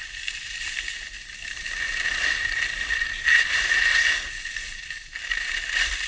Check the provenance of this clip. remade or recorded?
recorded